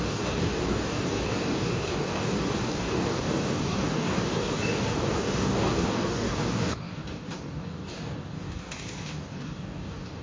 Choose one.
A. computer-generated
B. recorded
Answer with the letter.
A